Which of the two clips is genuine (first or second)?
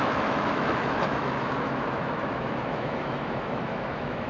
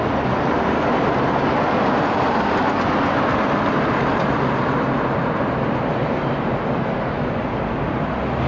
second